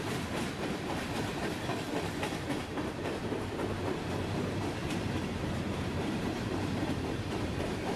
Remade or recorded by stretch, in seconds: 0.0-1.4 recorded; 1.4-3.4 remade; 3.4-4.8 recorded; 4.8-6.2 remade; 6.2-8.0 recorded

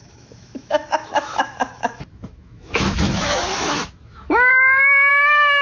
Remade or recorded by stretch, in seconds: 0.0-4.5 remade; 4.5-5.1 recorded; 5.1-5.6 remade

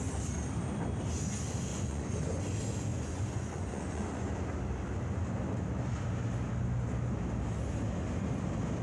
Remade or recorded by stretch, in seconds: 0.0-1.7 recorded; 1.7-2.4 remade; 2.4-2.9 recorded; 2.9-4.3 remade; 4.3-8.8 recorded

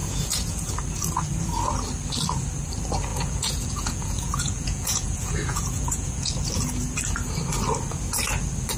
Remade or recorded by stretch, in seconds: 0.0-0.7 remade; 0.7-3.1 recorded; 3.1-6.5 remade; 6.5-8.8 recorded